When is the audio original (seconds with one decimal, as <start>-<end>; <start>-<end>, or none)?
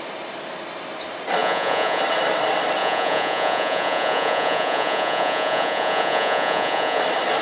0.0-1.4; 2.0-2.8; 7.0-7.4